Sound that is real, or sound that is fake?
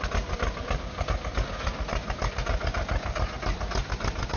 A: real